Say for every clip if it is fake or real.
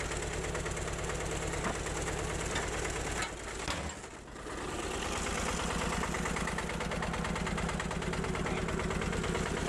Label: real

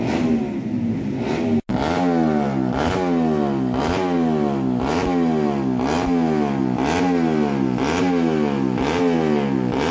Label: real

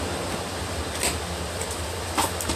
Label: real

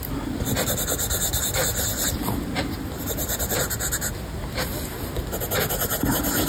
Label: real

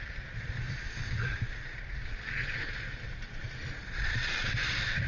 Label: real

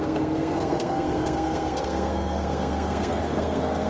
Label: fake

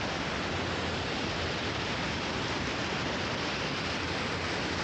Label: real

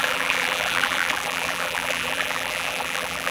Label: fake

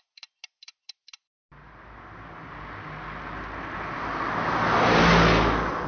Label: real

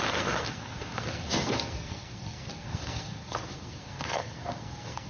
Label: fake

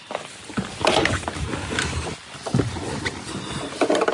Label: real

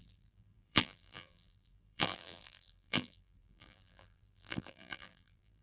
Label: fake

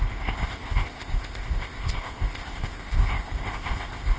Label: fake